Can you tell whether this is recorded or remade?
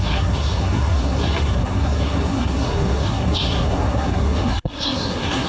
remade